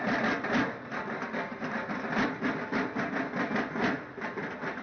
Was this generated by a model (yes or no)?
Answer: no